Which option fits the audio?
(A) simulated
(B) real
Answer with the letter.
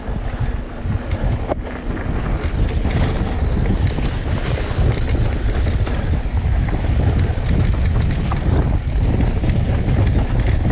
B